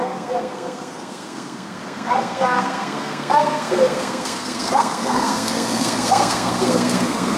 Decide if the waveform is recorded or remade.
remade